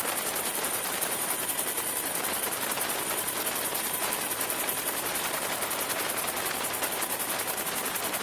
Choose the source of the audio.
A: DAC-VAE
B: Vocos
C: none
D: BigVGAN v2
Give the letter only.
D